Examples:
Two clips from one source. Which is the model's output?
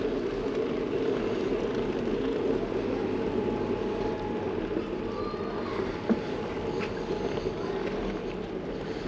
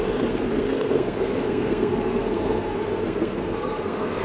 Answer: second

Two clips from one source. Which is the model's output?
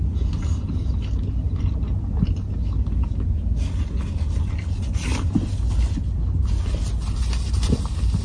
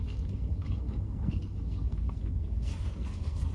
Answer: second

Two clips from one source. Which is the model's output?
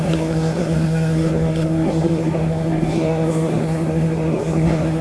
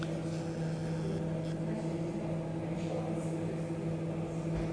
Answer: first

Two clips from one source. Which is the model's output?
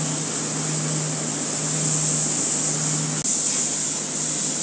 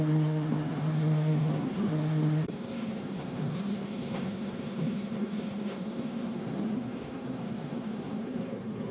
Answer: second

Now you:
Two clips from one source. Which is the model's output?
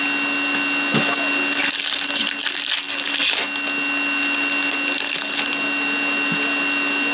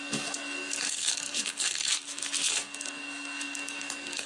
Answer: second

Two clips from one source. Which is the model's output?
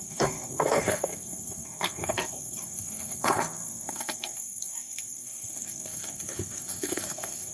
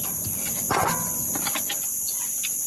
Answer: first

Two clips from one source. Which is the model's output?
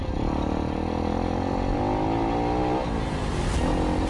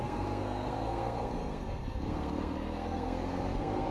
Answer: second